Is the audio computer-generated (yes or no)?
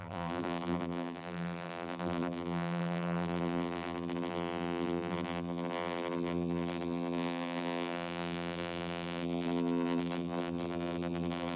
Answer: yes